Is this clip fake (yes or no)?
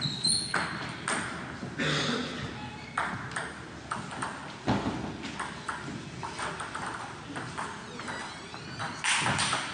no